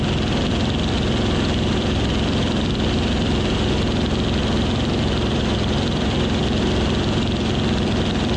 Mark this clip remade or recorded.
remade